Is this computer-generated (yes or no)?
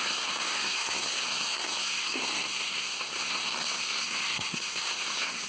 yes